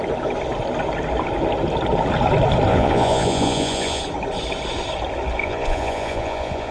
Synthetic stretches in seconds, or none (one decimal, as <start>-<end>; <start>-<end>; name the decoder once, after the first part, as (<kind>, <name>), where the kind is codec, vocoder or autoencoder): 2.7-4.0 (vocoder, Vocos); 5.4-6.7